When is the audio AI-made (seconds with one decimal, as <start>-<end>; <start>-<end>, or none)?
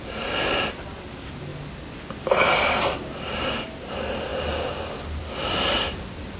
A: none